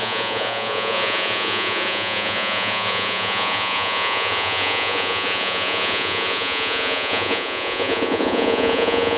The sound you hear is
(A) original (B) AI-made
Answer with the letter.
B